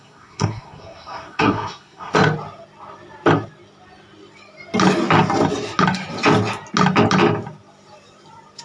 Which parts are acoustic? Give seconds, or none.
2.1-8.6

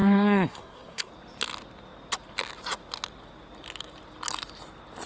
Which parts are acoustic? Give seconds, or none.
1.1-5.1

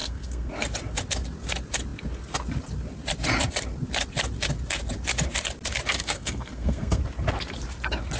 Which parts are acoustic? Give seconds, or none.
0.5-5.9; 7.0-8.2

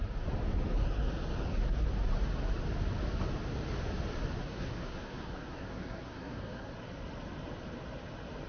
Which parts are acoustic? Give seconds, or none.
0.0-4.4; 6.7-8.5

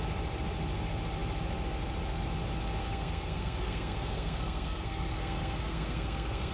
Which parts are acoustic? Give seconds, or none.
0.0-2.8

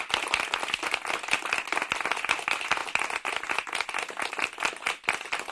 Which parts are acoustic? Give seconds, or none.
0.0-5.5

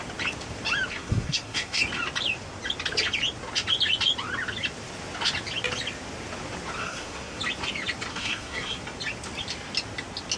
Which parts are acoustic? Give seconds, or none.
0.0-0.9; 1.8-6.8; 7.4-8.1; 8.8-10.4

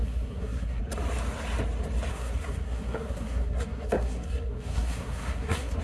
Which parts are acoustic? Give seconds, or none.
0.8-2.1